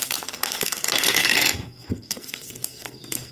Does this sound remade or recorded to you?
remade